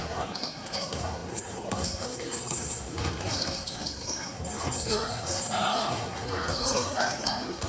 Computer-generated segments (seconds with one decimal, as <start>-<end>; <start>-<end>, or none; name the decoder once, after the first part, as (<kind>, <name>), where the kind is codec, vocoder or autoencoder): 0.0-7.7 (codec, SNAC)